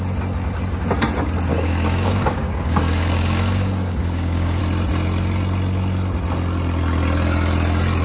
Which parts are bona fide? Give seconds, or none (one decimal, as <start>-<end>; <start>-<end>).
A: 0.0-1.5; 4.6-8.0